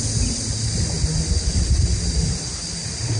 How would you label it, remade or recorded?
recorded